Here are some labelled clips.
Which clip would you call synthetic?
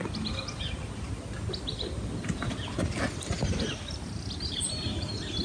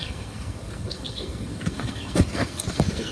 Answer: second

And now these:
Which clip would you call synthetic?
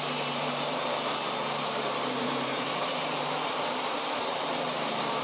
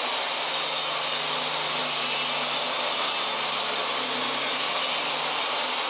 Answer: first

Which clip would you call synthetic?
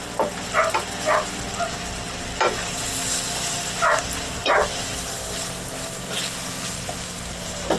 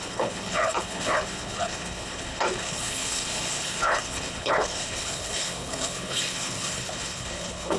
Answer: second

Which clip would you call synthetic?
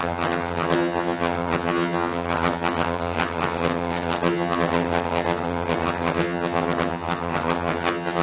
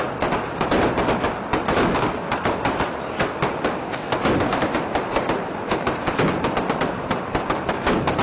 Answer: first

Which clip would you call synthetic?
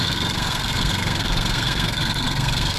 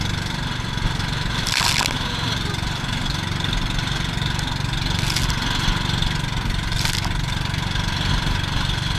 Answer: first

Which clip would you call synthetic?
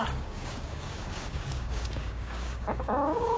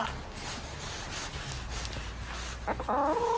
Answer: first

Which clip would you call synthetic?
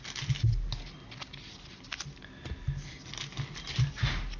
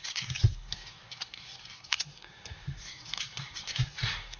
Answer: second